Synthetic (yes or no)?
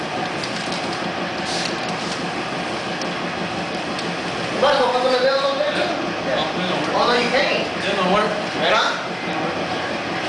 no